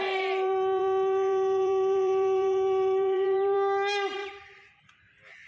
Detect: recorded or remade remade